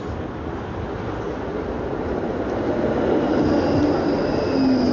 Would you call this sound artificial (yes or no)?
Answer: no